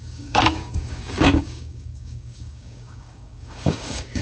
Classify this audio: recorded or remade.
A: remade